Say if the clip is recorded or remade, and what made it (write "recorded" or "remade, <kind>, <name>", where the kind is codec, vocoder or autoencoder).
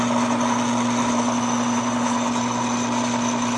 remade, vocoder, BigVGAN v2